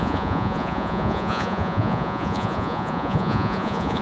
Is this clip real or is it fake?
fake